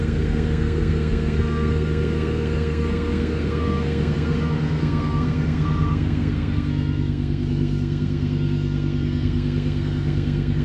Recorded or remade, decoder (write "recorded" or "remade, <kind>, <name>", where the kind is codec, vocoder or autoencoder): remade, codec, SNAC